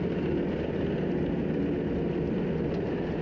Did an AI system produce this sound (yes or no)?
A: no